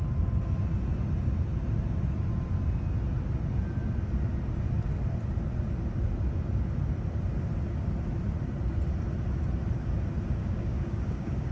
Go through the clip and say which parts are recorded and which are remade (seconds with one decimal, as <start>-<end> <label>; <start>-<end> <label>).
0.0-10.4 recorded; 10.4-11.5 remade

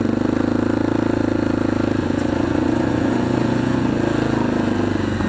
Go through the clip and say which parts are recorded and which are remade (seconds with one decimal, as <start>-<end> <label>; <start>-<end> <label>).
0.0-2.0 recorded; 2.0-4.0 remade; 4.0-5.3 recorded

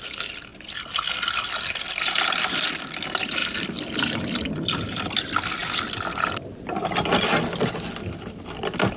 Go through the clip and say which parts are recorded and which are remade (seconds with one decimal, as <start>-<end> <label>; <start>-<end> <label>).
0.0-9.0 recorded